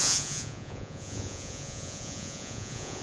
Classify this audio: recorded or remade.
remade